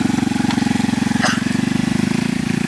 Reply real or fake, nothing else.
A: real